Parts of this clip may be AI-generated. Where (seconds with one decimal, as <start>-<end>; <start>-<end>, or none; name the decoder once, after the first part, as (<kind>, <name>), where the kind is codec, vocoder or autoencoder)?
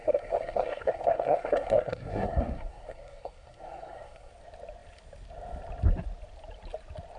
0.0-4.3 (codec, SNAC)